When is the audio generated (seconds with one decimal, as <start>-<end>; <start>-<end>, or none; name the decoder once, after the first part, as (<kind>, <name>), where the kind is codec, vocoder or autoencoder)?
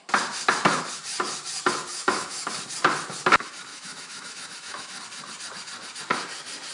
1.9-2.5 (autoencoder, DAC-VAE); 3.7-5.0